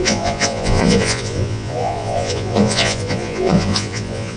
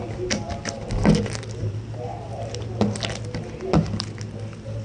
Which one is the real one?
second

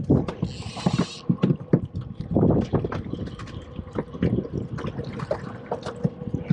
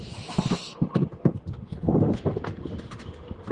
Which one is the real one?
first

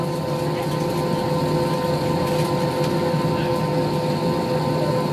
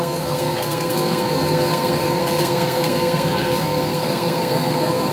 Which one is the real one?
first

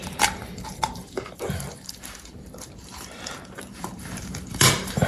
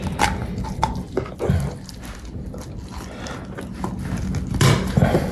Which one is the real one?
second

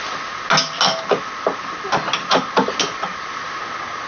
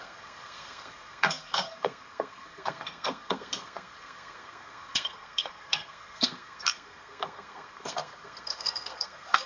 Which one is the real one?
first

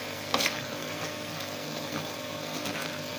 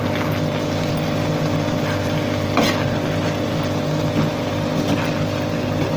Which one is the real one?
second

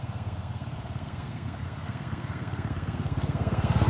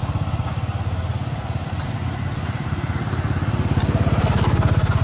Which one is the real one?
second